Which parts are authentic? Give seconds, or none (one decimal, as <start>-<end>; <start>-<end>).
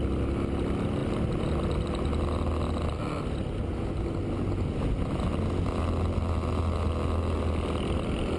0.0-8.4